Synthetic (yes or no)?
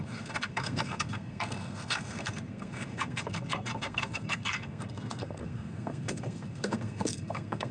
yes